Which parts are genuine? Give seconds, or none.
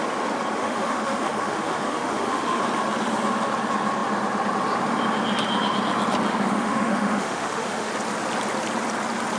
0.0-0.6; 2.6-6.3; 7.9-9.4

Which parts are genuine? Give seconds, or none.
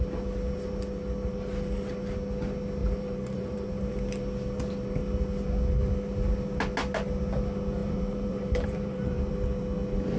0.0-2.8; 3.9-7.8; 9.3-10.2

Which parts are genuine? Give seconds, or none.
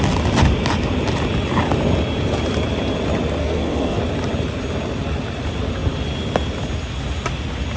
0.0-3.4; 4.0-7.8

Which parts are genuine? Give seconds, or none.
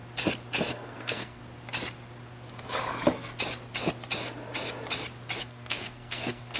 0.0-0.7; 1.4-5.4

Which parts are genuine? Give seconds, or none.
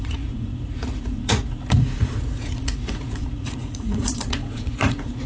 none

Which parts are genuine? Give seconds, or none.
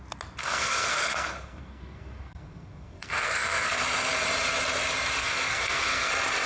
0.0-0.4; 3.8-5.2; 6.1-6.5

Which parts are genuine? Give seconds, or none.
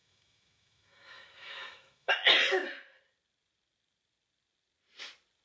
2.1-5.4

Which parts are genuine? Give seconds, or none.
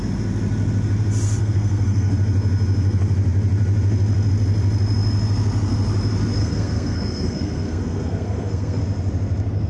0.0-1.4; 2.1-6.4; 8.8-9.7